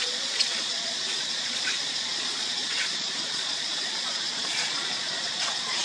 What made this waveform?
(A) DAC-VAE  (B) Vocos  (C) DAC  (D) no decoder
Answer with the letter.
B